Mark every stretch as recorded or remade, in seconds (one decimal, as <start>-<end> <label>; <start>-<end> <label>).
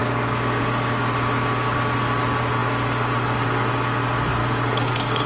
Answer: 0.0-4.4 recorded; 4.4-5.3 remade